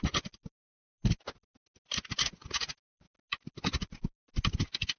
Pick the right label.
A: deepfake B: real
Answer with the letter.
B